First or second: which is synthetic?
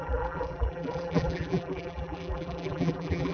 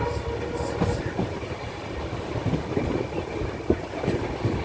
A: first